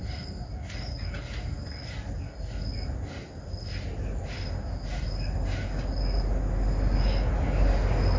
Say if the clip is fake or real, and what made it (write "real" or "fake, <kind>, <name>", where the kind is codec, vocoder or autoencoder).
real